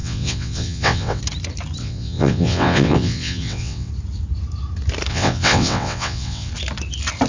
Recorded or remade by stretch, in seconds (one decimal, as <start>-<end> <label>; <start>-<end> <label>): 0.0-1.2 remade; 1.2-1.8 recorded; 1.8-3.9 remade; 3.9-5.1 recorded; 5.1-6.5 remade; 6.5-7.3 recorded